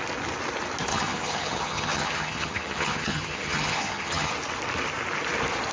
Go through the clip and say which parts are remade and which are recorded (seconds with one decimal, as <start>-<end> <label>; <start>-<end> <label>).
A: 0.0-0.9 recorded; 0.9-4.3 remade; 4.3-5.7 recorded